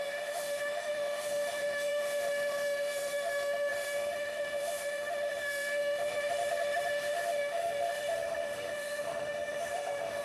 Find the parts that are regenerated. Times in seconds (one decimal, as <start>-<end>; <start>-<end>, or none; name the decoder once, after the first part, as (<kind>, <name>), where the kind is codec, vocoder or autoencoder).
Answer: 0.0-10.2 (autoencoder, DAC-VAE)